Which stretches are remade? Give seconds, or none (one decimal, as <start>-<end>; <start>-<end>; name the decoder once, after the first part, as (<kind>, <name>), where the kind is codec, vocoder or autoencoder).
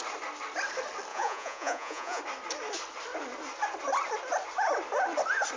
1.1-2.2 (vocoder, Vocos)